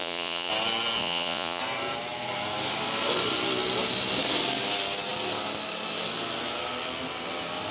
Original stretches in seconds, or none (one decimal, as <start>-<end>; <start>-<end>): 0.5-1.0; 1.6-7.7